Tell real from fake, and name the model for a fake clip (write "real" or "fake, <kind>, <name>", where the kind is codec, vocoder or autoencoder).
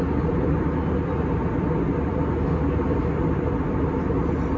real